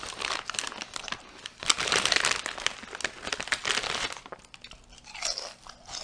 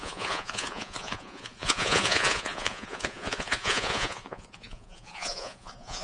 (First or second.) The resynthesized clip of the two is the second